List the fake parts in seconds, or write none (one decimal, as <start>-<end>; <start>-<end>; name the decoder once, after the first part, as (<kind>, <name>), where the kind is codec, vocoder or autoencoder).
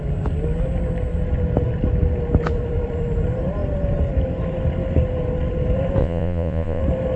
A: 6.0-6.8 (vocoder, Vocos)